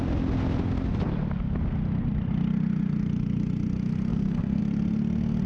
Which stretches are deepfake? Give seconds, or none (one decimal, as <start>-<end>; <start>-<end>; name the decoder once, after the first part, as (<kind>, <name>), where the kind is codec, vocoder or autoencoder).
4.1-4.6 (codec, SNAC)